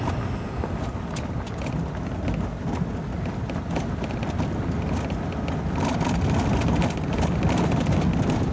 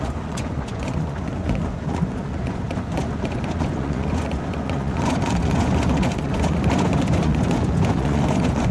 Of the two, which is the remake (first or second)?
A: second